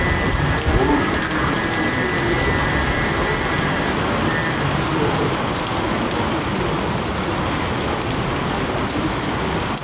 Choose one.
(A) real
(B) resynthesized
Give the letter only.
A